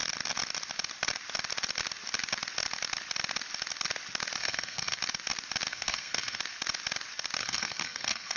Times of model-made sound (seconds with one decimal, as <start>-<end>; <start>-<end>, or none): 4.4-5.0; 5.7-6.4; 7.4-8.4